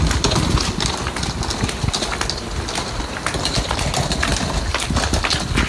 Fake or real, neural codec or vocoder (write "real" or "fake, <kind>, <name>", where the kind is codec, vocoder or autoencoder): real